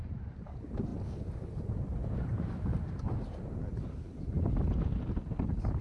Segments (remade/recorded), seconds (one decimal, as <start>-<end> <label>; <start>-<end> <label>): 0.0-5.8 recorded